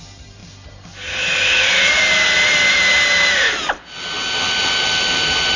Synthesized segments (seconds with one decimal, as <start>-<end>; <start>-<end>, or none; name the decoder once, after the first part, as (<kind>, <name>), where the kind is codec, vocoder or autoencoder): none